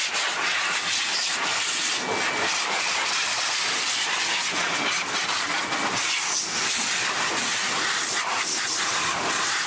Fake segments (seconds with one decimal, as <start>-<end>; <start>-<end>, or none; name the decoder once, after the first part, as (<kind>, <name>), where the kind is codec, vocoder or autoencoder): none